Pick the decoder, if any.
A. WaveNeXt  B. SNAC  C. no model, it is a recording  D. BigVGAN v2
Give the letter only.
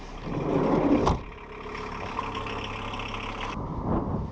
C